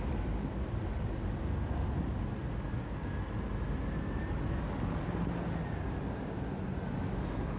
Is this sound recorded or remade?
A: recorded